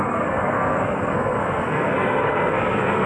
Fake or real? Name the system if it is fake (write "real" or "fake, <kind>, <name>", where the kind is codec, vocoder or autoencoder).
fake, codec, SNAC